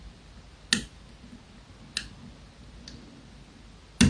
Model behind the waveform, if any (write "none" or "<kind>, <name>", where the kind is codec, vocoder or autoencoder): none